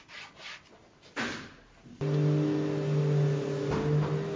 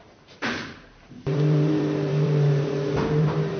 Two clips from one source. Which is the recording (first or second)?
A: first